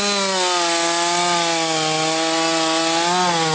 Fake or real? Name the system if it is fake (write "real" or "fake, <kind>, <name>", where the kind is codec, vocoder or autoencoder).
real